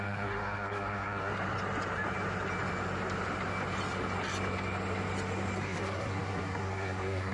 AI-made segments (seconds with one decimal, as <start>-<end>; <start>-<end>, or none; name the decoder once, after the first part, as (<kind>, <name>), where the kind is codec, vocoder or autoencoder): 0.0-1.3 (codec, SNAC); 5.6-7.3